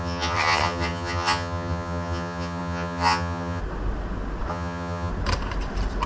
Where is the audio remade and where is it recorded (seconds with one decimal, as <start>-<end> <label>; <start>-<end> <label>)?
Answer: 0.0-3.6 remade; 3.6-4.5 recorded; 4.5-5.1 remade; 5.1-6.1 recorded